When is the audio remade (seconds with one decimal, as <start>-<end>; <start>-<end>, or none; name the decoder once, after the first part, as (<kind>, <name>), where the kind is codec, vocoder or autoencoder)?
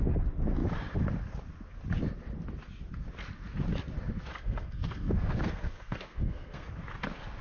4.3-6.7 (codec, SNAC)